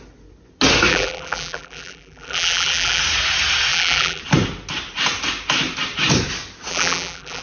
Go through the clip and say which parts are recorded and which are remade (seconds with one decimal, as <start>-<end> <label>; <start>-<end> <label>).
0.0-0.9 recorded; 0.9-3.0 remade; 3.0-3.7 recorded; 3.7-4.2 remade; 4.2-6.7 recorded; 6.7-7.4 remade